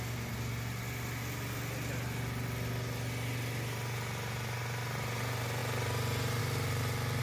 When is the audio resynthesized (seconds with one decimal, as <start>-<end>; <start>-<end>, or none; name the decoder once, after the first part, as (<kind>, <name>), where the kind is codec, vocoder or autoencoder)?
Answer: none